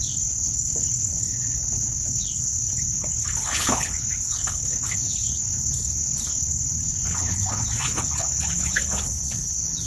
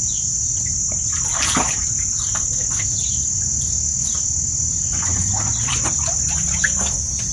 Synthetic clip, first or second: first